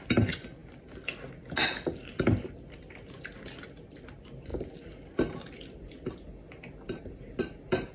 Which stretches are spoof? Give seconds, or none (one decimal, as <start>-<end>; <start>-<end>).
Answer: none